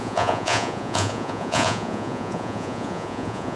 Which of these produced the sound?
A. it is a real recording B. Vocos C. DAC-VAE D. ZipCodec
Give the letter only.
B